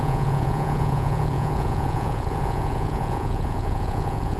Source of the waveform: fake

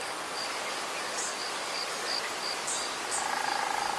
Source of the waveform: real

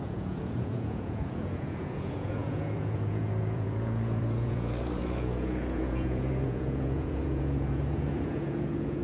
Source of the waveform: fake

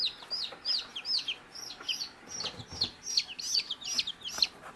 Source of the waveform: real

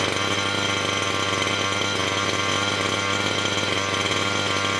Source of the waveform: real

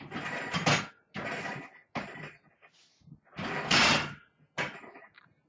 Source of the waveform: real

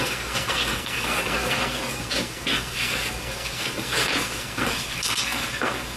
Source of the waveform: fake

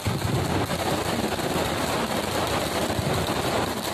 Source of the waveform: real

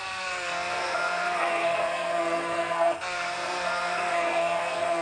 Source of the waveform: fake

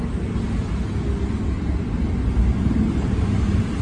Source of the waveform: real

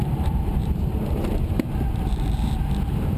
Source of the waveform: fake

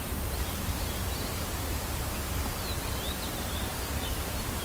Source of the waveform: fake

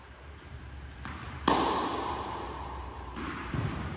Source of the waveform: fake